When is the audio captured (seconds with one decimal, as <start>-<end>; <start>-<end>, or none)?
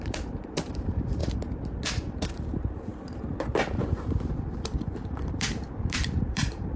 1.2-2.2; 2.9-3.8